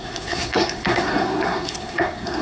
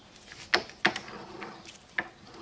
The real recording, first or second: second